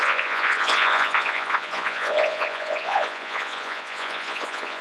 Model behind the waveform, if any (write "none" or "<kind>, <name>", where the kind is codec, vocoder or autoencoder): vocoder, Vocos